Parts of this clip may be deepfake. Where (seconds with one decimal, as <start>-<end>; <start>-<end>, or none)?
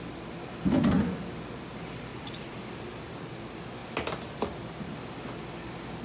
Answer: 2.1-2.6